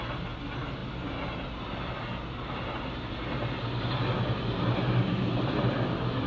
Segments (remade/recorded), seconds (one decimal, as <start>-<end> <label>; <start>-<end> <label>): 0.0-6.3 recorded